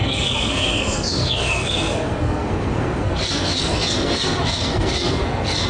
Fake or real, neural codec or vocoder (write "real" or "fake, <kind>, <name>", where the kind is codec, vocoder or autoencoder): fake, codec, SNAC